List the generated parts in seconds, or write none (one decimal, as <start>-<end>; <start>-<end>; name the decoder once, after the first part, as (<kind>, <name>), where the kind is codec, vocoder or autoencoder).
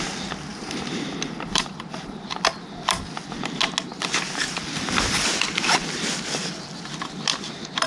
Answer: 0.5-2.2 (vocoder, BigVGAN v2)